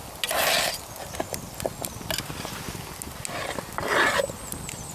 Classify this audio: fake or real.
real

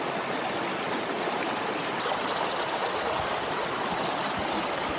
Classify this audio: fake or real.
real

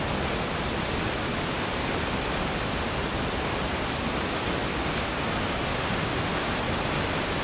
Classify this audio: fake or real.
real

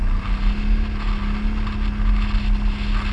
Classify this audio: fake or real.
real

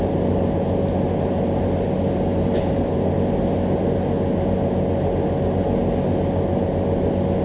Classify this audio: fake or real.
real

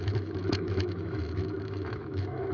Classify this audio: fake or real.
fake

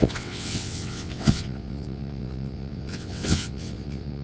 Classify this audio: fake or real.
fake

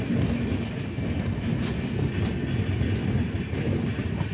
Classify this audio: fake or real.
real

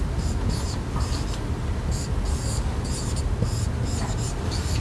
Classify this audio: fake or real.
real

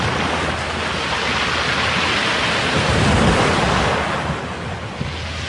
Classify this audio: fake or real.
real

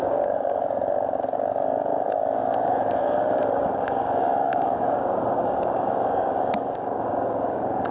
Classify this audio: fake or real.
fake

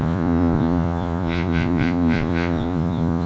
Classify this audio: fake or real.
fake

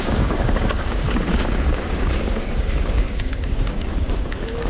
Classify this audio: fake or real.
fake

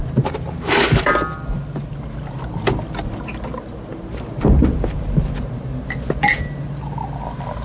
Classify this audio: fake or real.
real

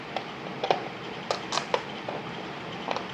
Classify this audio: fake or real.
real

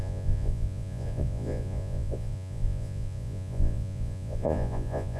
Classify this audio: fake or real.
fake